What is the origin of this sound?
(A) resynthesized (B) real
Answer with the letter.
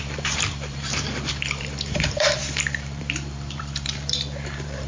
A